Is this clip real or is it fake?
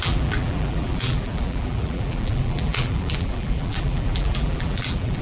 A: fake